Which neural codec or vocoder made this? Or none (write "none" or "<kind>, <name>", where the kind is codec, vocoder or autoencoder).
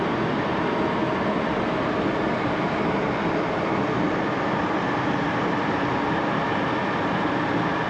vocoder, BigVGAN v2